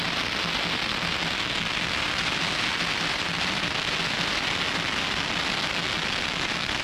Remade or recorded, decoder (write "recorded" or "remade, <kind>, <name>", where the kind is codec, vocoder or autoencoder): recorded